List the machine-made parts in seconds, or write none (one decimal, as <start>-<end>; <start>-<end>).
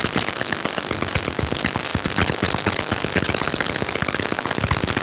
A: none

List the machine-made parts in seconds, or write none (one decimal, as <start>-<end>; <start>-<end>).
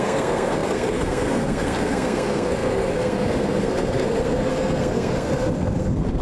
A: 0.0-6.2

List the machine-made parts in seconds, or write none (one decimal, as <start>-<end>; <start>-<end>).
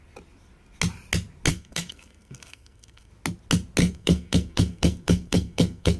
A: 1.5-3.1; 3.8-6.0